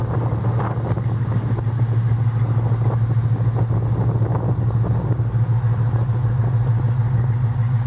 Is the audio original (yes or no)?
yes